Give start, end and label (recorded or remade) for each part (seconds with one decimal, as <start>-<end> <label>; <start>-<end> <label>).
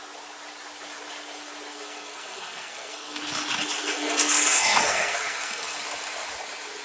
0.0-1.7 recorded; 1.7-3.2 remade; 3.2-3.8 recorded; 3.8-5.8 remade; 5.8-6.8 recorded